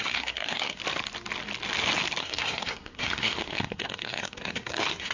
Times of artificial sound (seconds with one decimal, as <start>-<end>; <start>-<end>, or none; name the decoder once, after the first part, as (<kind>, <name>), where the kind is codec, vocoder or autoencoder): 0.0-0.8 (codec, SNAC); 2.2-5.1